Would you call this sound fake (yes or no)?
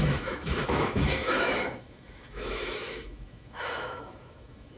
yes